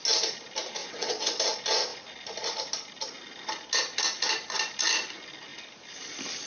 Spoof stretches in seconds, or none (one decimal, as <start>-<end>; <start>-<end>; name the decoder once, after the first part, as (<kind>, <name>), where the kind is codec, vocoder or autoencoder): 0.8-1.4 (vocoder, WaveNeXt)

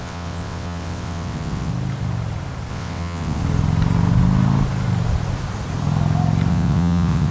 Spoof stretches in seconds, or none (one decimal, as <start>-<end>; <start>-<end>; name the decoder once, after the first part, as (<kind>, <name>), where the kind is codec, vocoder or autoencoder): 0.0-1.7 (vocoder, WaveNeXt); 2.7-3.4; 6.5-7.3